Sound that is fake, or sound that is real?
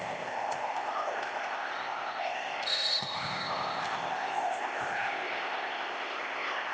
fake